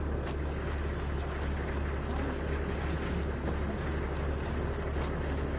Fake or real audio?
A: real